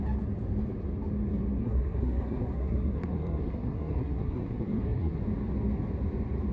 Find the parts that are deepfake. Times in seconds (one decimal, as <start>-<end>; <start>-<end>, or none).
1.6-5.2